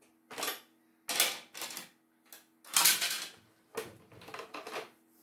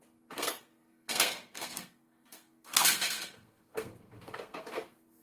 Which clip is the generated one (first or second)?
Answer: second